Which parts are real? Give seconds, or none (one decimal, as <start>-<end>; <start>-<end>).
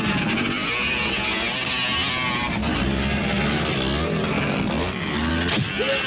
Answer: 0.0-6.1